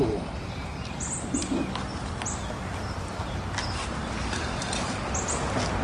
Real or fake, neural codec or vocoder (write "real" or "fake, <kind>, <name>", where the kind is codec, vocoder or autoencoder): real